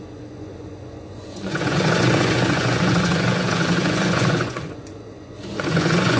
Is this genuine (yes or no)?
no